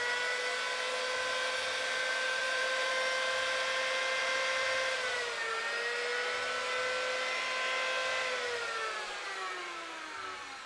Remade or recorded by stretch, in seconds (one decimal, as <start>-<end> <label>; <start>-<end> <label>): 0.0-2.4 recorded; 2.4-2.9 remade; 2.9-4.2 recorded; 4.2-5.6 remade; 5.6-10.7 recorded